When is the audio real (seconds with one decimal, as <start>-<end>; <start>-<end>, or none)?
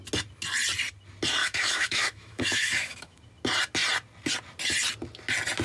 0.0-1.4; 3.2-5.6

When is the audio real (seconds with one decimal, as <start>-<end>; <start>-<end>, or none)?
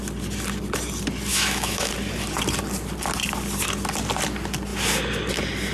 0.0-1.3; 1.9-5.7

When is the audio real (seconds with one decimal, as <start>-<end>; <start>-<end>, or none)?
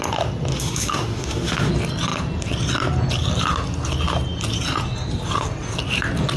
0.0-0.5; 1.7-6.4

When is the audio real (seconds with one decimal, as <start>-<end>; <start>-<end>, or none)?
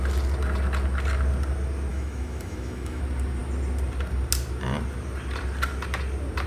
0.0-1.9; 3.0-6.5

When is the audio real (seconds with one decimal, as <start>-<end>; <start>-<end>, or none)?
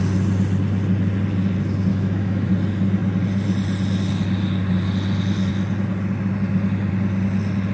0.0-1.9; 2.5-7.7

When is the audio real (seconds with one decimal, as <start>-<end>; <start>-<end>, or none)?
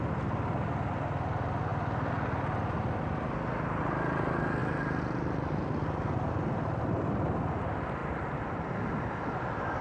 0.0-9.8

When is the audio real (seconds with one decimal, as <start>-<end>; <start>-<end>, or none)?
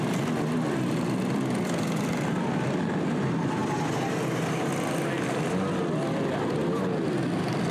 0.0-7.7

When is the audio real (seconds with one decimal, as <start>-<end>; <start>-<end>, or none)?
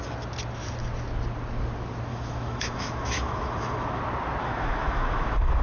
0.0-2.1; 4.0-4.4